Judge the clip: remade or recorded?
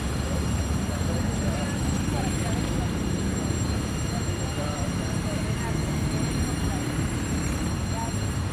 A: remade